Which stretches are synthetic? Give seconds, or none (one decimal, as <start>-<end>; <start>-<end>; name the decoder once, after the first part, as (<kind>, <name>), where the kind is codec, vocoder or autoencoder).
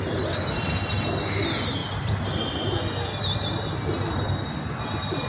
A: none